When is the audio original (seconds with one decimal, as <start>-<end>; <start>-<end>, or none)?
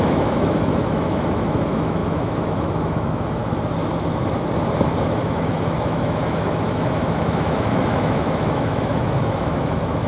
3.4-5.0